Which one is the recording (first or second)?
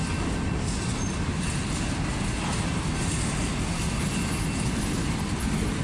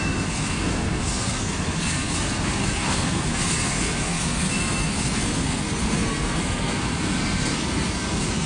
first